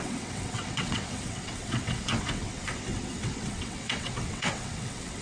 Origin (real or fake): fake